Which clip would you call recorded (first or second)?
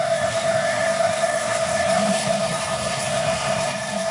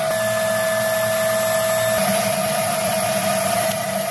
second